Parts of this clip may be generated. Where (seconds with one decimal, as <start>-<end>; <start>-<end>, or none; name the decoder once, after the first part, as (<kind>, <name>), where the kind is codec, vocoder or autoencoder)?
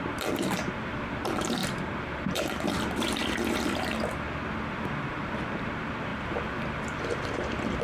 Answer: 0.0-3.2 (vocoder, BigVGAN v2); 4.1-7.8